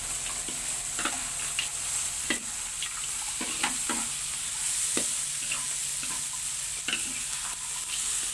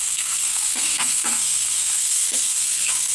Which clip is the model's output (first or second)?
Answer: second